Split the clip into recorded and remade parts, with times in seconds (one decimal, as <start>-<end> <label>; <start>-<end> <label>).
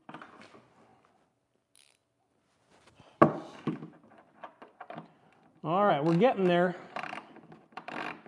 0.0-8.3 recorded